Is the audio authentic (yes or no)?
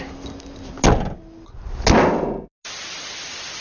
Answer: yes